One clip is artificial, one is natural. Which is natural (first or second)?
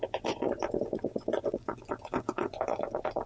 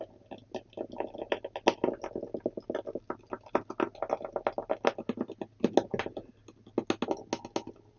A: second